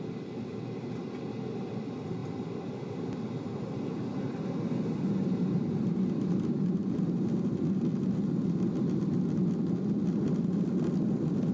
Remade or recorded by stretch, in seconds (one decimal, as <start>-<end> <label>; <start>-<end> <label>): 0.0-11.5 recorded